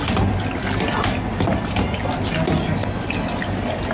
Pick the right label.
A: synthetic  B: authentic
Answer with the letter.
B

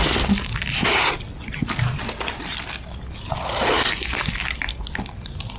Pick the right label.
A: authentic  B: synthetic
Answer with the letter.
A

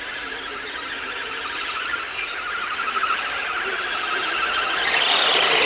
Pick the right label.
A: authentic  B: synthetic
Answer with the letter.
A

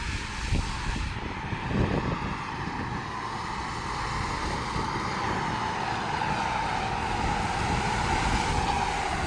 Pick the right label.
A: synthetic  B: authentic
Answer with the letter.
B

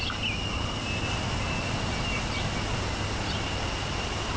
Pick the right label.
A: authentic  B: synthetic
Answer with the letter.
A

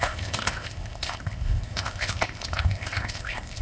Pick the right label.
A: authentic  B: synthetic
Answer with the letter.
B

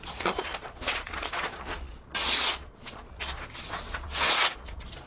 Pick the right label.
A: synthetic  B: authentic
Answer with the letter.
A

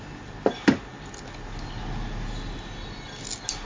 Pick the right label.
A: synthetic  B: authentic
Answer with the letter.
B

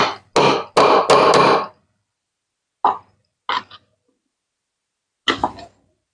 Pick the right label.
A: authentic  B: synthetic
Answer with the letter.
A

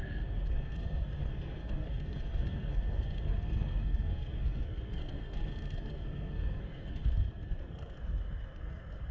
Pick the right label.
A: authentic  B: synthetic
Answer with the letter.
B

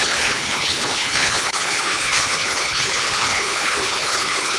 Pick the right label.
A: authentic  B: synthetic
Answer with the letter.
B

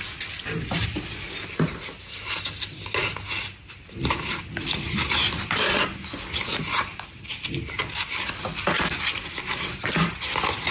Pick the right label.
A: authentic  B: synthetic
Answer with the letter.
A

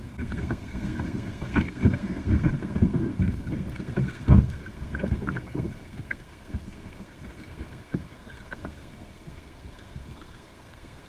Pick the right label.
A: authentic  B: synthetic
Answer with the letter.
B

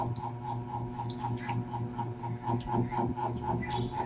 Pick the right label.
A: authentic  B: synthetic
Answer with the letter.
A